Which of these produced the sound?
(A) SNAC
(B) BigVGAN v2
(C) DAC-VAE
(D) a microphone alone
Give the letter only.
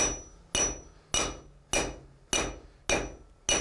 D